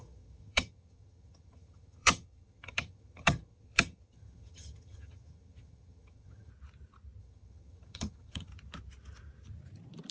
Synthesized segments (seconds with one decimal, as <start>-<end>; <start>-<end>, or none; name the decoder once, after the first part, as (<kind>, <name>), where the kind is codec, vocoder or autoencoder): 0.0-6.5 (vocoder, HiFi-GAN); 7.2-8.5